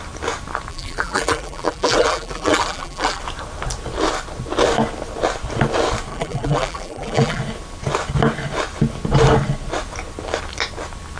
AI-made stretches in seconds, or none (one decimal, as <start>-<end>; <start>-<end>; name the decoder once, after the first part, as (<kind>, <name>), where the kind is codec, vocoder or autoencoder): 0.7-3.2 (vocoder, BigVGAN v2); 6.1-7.4